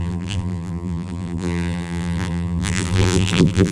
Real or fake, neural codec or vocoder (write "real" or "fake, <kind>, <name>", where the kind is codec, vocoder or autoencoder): fake, vocoder, BigVGAN v2